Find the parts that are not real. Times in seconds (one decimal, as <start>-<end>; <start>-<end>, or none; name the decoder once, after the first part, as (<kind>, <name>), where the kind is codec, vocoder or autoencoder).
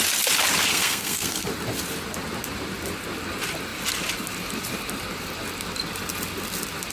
0.7-1.5 (codec, SNAC)